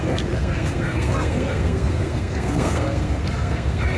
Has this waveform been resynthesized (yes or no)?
yes